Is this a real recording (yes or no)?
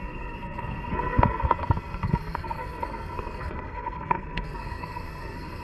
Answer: no